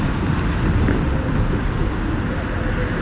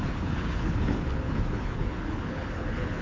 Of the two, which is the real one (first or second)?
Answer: first